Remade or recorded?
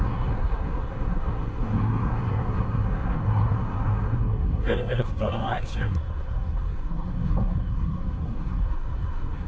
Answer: remade